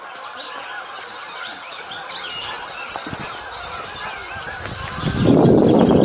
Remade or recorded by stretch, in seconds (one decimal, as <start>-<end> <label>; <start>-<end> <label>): 0.0-6.0 recorded